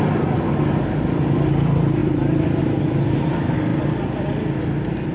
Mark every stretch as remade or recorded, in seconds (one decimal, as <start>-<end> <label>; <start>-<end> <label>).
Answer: 0.0-2.0 recorded; 2.0-2.6 remade; 2.6-3.7 recorded; 3.7-4.2 remade; 4.2-5.1 recorded